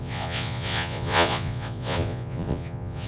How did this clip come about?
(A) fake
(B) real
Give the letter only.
A